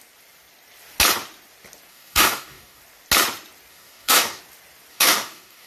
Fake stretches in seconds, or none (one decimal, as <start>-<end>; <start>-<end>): 1.9-2.8; 3.7-4.4; 4.9-5.7